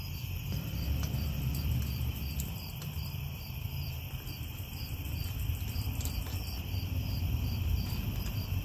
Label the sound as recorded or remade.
remade